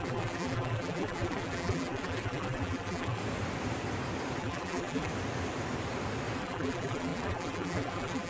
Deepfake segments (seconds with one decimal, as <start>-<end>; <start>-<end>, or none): 0.0-3.2; 4.4-5.1; 6.4-8.3